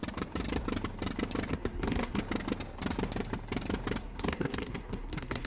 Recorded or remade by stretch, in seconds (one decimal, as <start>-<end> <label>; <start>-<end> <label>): 0.0-1.5 recorded; 1.5-2.2 remade; 2.2-4.0 recorded; 4.0-5.5 remade